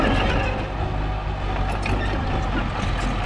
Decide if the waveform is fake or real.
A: real